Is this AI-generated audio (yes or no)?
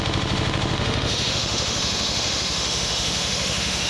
yes